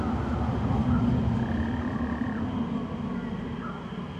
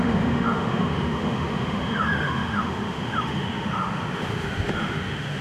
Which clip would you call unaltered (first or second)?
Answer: first